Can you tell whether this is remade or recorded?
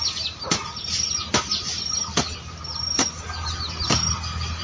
recorded